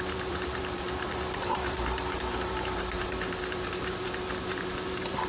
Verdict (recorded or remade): remade